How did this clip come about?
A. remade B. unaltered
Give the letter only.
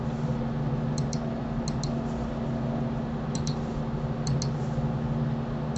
B